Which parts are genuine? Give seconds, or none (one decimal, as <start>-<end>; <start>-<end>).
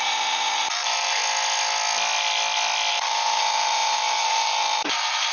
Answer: 1.2-2.9